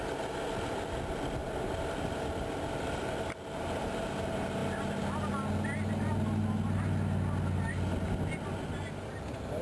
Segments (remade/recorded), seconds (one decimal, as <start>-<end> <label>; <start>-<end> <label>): 0.0-1.4 recorded; 1.4-2.3 remade; 2.3-4.6 recorded; 4.6-6.4 remade; 6.4-9.6 recorded